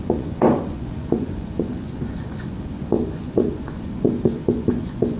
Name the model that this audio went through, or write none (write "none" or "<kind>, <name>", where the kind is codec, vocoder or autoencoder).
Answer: vocoder, Vocos